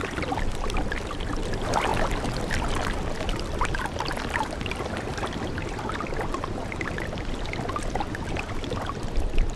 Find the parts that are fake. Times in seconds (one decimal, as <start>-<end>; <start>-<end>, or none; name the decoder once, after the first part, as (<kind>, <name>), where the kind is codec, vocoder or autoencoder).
none